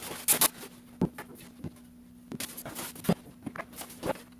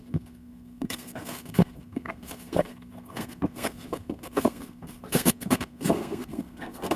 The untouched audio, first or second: first